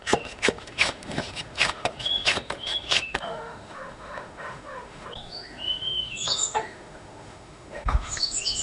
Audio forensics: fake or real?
fake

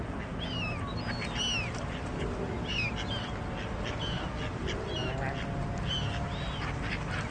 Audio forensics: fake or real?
real